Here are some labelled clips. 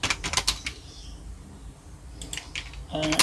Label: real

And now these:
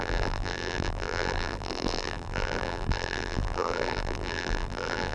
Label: fake